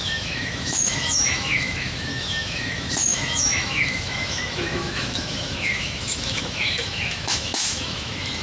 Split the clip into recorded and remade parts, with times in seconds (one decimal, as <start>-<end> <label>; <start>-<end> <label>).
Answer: 0.0-8.4 remade